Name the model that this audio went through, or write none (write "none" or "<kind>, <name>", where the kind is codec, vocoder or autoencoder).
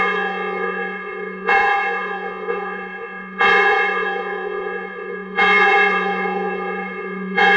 vocoder, Vocos